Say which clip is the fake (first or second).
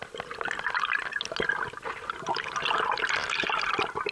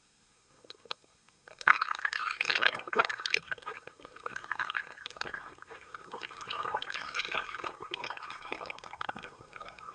second